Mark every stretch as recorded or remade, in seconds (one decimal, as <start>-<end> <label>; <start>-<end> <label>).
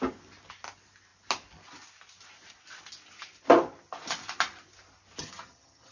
0.0-5.2 recorded; 5.2-5.9 remade